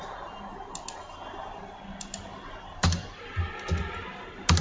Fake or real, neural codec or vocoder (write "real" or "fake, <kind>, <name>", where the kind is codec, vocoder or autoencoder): real